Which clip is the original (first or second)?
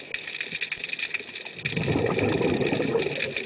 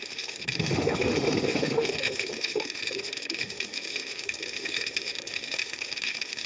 first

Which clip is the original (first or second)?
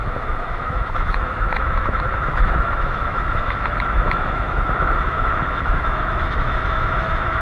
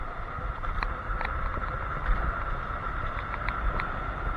second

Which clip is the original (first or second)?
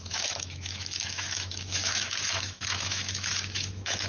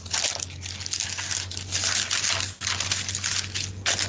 second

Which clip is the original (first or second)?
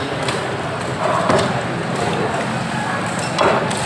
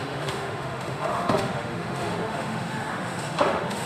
first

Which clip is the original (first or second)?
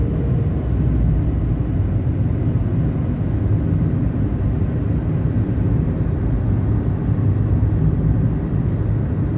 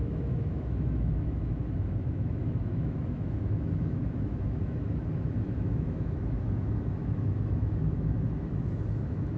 first